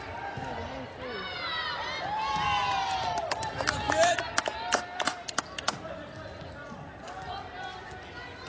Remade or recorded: recorded